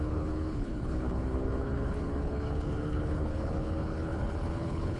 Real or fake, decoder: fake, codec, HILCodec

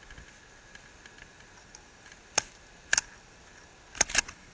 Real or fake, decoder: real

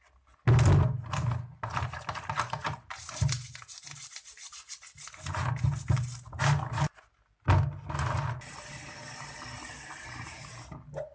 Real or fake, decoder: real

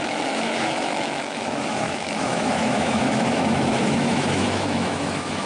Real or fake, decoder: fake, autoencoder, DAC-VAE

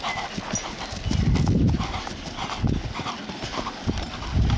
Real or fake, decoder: real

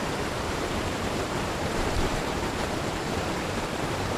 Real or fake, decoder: fake, vocoder, BigVGAN v2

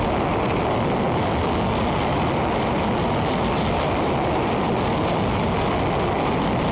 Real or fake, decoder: real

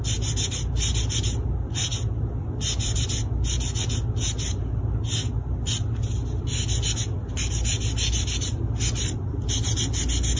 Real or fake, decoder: real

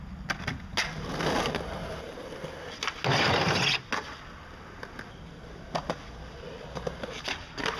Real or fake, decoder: real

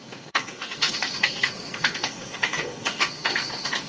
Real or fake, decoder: fake, codec, SNAC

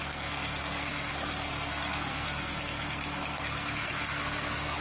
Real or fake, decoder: fake, codec, SNAC